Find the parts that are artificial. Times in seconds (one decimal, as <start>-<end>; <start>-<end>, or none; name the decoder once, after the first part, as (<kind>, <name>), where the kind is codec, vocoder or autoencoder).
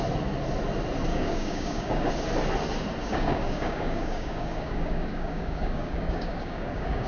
1.1-2.1 (codec, DAC); 3.0-7.1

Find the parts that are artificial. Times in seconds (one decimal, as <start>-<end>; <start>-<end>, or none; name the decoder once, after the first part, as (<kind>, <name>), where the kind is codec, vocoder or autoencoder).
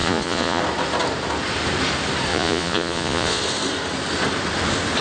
0.0-0.6 (vocoder, Vocos); 2.3-3.4